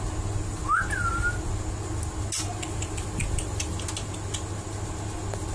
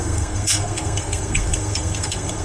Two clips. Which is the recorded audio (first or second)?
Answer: first